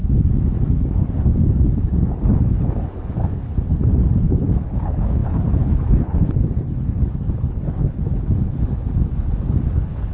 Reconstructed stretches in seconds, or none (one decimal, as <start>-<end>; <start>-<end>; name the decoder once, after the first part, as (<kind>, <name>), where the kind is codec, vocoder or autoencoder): 0.7-10.1 (codec, HILCodec)